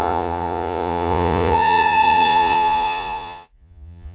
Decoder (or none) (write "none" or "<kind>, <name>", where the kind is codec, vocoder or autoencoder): vocoder, Vocos